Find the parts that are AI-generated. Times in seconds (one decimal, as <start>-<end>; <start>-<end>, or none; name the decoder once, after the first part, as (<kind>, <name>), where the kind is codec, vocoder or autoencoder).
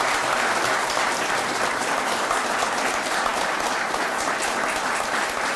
none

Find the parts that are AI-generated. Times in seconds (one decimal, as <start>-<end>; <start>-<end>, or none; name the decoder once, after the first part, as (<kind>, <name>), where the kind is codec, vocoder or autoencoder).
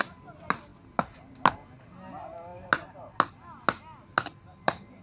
none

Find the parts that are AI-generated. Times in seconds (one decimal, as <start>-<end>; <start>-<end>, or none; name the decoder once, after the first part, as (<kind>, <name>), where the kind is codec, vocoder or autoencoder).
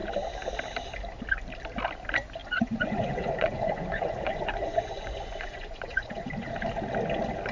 2.4-6.5 (vocoder, Vocos)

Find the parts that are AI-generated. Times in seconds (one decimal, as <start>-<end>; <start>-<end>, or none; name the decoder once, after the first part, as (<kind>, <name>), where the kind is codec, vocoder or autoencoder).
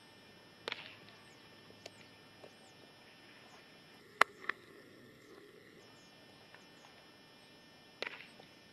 4.0-5.8 (codec, SNAC)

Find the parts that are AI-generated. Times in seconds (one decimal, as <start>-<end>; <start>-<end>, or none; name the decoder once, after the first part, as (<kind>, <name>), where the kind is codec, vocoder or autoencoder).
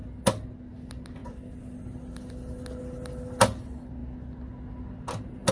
none